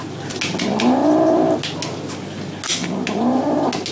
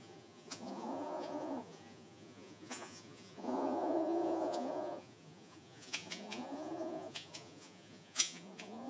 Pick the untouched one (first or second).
first